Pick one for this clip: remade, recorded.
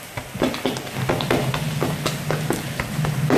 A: recorded